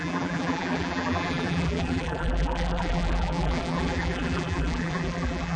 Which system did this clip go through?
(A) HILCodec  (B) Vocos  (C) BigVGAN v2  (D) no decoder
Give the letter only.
C